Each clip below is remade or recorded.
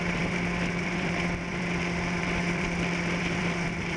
remade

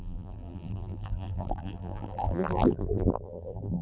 remade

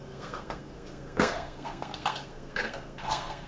remade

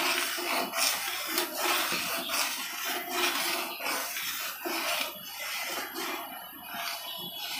recorded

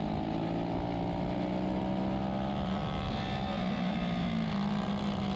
recorded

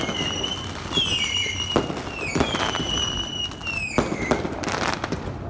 recorded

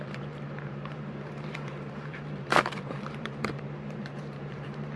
remade